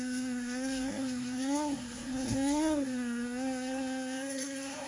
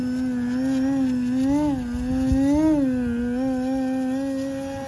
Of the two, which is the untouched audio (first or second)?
second